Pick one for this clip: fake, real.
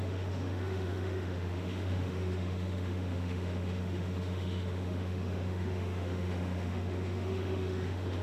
fake